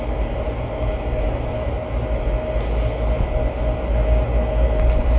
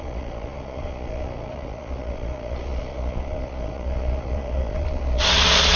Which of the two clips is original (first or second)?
first